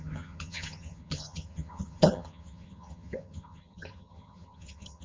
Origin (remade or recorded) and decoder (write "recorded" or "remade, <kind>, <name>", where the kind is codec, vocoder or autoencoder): remade, vocoder, HiFi-GAN